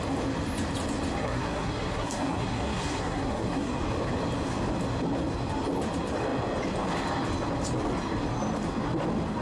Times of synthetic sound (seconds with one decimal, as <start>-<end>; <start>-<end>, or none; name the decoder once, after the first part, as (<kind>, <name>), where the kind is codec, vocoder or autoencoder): 1.2-3.8 (codec, SNAC)